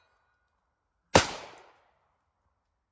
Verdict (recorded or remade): recorded